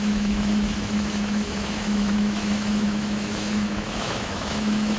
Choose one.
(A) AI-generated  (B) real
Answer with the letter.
A